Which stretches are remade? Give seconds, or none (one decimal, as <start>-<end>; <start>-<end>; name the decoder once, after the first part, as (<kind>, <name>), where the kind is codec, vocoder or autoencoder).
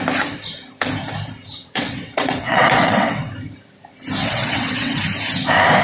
1.6-3.3 (vocoder, WaveNeXt); 4.2-5.0